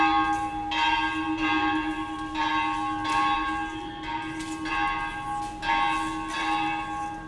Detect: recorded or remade recorded